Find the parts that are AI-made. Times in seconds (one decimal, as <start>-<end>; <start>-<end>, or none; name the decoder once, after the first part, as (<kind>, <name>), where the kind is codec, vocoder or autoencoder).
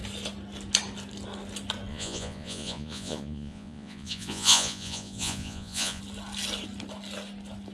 1.9-6.0 (vocoder, Vocos)